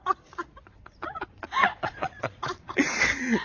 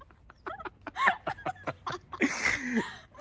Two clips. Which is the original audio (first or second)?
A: second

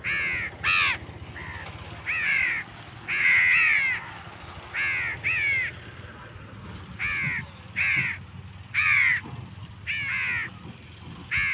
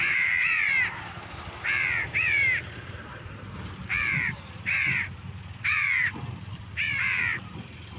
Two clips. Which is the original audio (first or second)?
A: first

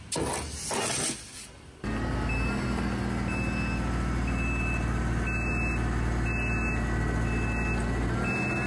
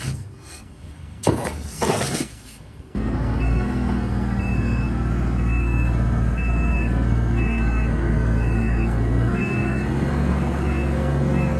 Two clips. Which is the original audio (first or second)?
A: first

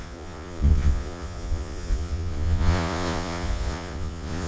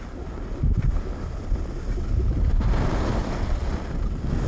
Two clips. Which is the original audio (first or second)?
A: second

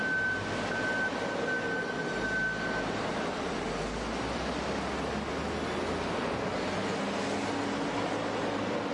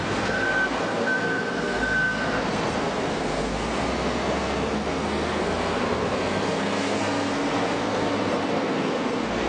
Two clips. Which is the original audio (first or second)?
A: first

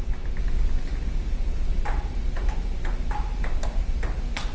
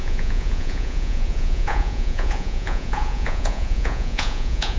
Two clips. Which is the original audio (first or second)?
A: first